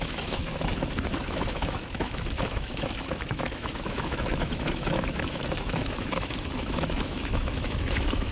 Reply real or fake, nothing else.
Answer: fake